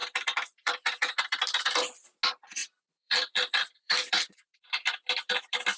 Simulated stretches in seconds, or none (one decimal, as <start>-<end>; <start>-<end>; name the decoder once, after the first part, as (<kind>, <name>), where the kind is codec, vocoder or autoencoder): 0.0-1.4 (vocoder, BigVGAN v2); 2.6-5.8